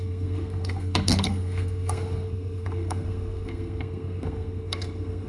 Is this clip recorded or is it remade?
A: remade